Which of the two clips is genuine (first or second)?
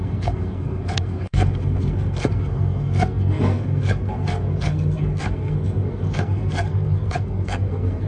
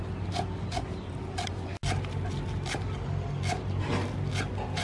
second